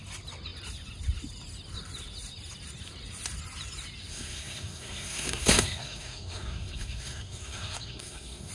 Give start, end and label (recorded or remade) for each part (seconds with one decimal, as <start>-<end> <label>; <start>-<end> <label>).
0.0-4.1 recorded; 4.1-8.5 remade